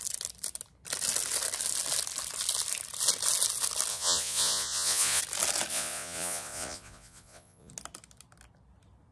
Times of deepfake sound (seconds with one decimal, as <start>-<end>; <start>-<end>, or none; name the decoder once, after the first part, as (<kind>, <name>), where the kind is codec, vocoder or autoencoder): 3.9-5.2 (vocoder, Vocos); 5.7-7.7